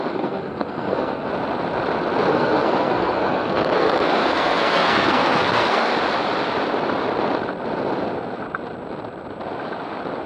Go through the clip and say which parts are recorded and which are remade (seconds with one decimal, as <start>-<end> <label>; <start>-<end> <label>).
0.0-1.3 remade; 1.3-2.3 recorded; 2.3-5.9 remade; 5.9-10.3 recorded